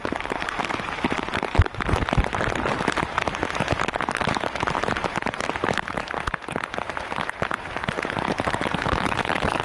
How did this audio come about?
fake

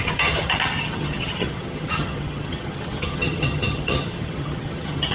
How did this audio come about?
fake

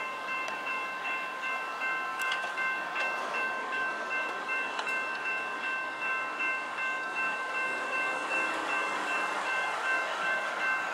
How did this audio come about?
fake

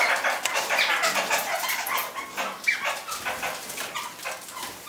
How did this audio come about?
real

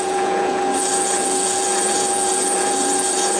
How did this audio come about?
fake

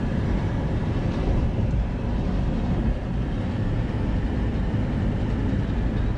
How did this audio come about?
fake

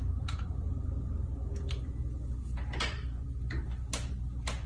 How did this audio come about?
real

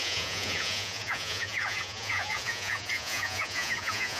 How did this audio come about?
fake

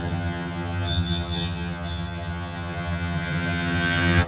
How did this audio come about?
fake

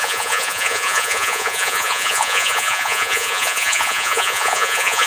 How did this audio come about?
fake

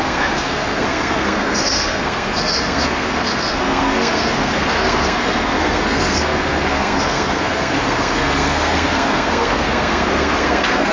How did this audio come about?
fake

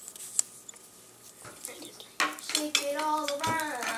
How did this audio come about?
real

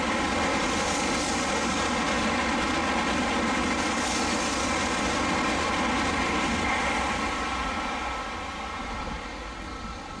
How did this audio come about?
real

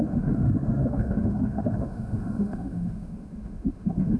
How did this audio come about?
fake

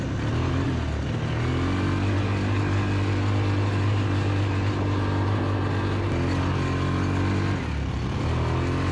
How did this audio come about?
real